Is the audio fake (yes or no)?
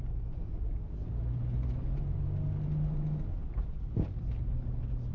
no